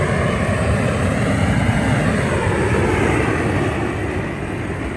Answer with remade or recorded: recorded